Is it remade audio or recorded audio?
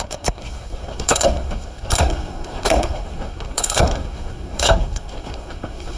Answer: remade